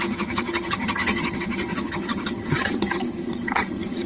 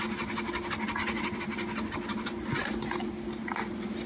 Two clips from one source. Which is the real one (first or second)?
second